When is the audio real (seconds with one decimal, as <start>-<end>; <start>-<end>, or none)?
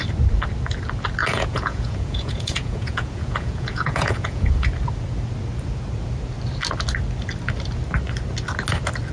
0.0-1.2; 4.7-9.1